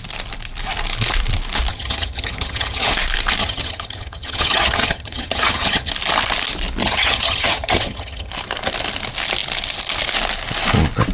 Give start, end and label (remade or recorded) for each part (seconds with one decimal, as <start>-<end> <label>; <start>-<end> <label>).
0.0-1.7 recorded; 1.7-2.9 remade; 2.9-3.4 recorded; 3.4-5.9 remade; 5.9-6.8 recorded; 6.8-8.3 remade; 8.3-11.1 recorded